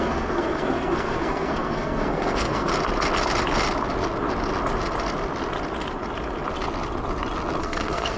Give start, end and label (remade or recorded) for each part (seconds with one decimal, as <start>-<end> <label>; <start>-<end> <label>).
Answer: 0.0-2.7 remade; 2.7-7.6 recorded; 7.6-8.2 remade